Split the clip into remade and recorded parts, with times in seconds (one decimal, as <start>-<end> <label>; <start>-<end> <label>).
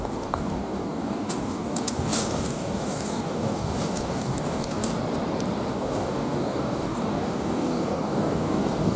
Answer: 0.0-4.9 remade; 4.9-5.7 recorded; 5.7-9.0 remade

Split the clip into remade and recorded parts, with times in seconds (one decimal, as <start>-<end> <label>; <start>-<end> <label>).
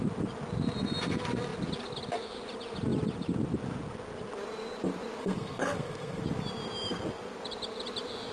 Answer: 0.0-5.2 recorded; 5.2-6.2 remade; 6.2-8.3 recorded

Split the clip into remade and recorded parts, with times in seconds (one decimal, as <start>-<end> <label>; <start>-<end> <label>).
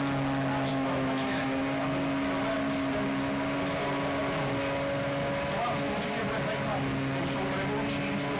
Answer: 0.0-0.7 recorded; 0.7-1.4 remade; 1.4-8.4 recorded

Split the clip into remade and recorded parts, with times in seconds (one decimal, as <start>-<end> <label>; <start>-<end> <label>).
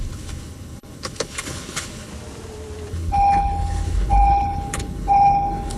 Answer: 0.0-2.1 remade; 2.1-2.9 recorded; 2.9-5.8 remade